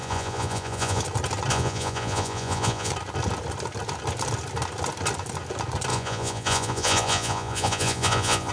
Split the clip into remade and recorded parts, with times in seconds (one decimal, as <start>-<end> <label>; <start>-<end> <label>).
0.0-1.0 remade; 1.0-1.5 recorded; 1.5-2.9 remade; 2.9-5.9 recorded; 5.9-8.5 remade